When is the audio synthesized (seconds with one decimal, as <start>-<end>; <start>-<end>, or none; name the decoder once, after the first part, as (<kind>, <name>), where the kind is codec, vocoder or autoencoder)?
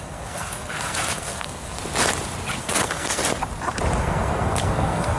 0.0-1.8 (codec, SNAC); 2.6-3.2; 4.0-5.2